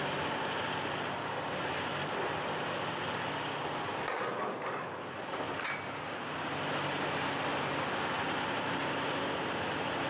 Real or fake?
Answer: real